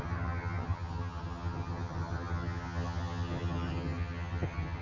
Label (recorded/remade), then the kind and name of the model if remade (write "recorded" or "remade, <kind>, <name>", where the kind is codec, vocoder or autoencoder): remade, vocoder, HiFi-GAN